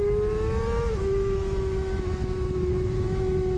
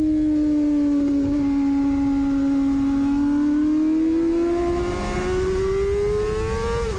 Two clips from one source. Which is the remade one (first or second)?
first